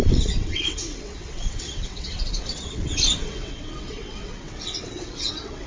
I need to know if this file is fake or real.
fake